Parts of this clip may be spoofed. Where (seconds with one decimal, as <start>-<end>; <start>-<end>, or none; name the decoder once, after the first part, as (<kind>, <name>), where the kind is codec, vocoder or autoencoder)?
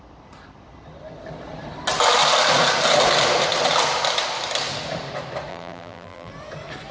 5.5-6.3 (vocoder, BigVGAN v2)